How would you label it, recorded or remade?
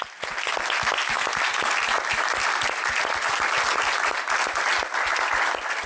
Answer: recorded